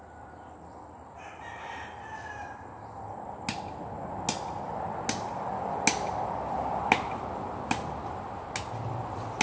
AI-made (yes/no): no